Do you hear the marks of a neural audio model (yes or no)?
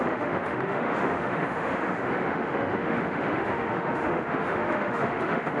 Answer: yes